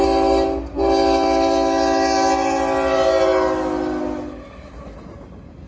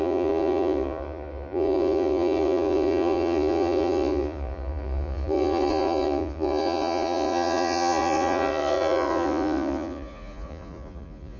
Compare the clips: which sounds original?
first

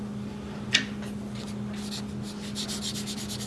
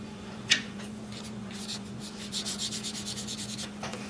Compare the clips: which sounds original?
first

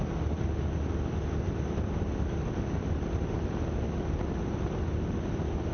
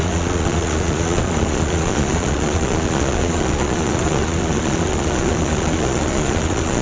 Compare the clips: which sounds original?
first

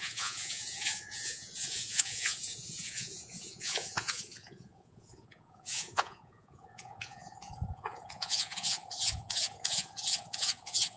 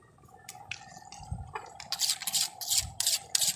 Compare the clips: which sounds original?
second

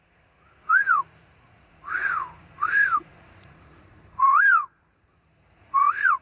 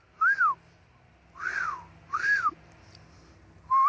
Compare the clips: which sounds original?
second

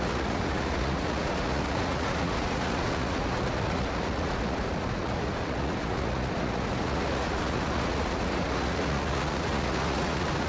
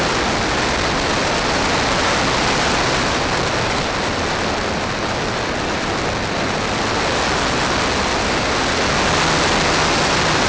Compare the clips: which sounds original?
second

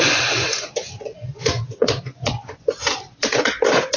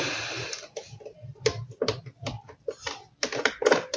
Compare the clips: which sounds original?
second